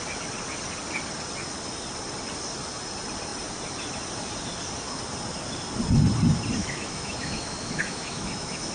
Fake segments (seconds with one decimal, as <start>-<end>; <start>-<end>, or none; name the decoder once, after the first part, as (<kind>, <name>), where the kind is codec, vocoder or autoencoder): 6.6-8.7 (autoencoder, DAC-VAE)